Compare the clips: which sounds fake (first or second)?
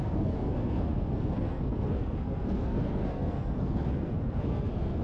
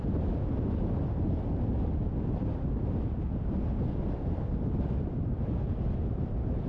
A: first